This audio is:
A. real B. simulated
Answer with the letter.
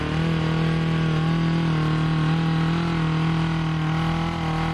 A